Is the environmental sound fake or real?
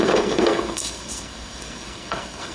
fake